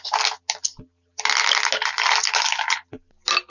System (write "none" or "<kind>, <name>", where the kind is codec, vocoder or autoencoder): none